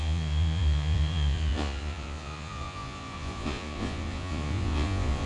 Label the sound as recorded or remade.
remade